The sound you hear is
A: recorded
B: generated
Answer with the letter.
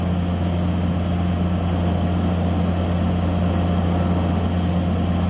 A